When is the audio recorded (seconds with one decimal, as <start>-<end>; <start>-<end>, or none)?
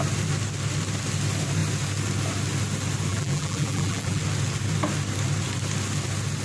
0.0-3.1; 4.2-6.4